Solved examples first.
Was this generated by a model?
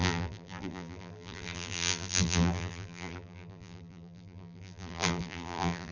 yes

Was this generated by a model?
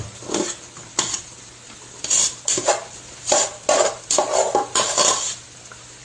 no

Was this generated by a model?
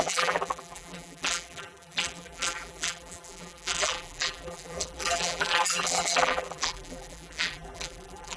yes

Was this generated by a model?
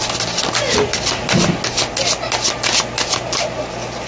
no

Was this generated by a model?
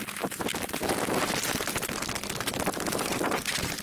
no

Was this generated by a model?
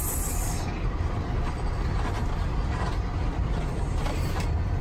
no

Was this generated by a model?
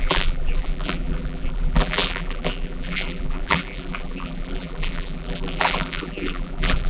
yes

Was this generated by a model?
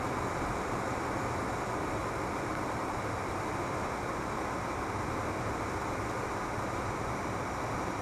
no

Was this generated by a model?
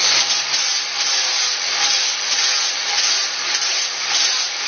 no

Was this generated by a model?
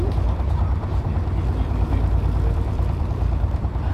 yes